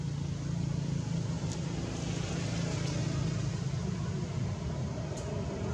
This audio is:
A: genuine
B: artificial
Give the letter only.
A